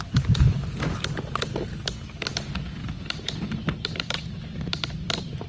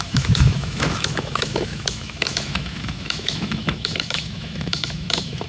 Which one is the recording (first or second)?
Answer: first